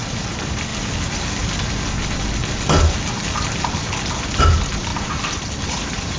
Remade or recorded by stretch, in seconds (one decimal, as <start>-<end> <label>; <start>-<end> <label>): 0.0-0.7 remade; 0.7-4.4 recorded; 4.4-4.9 remade; 4.9-5.7 recorded; 5.7-6.2 remade